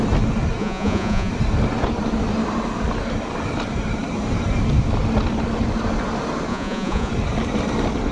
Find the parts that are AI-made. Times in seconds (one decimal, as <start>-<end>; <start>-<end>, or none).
0.6-1.3; 6.5-7.1